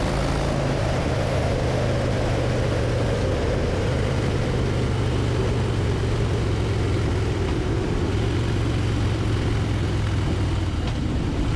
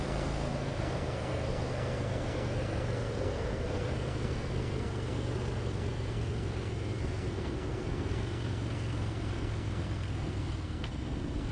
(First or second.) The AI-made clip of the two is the second